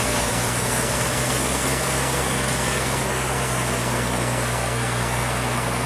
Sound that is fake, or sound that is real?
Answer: fake